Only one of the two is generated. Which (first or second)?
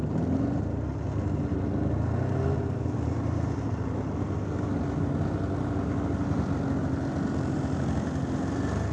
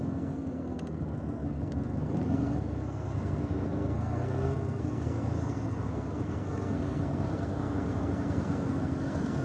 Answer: second